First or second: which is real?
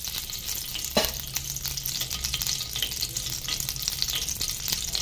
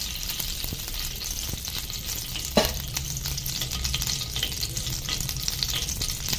first